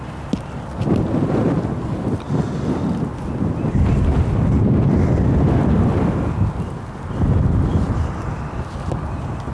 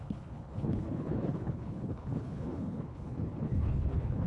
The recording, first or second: first